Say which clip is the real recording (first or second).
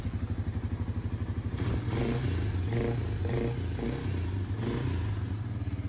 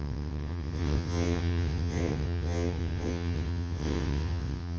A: first